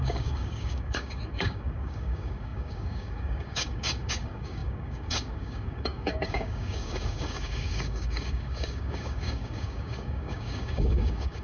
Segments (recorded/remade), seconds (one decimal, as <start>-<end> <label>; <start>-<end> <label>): 0.0-11.4 remade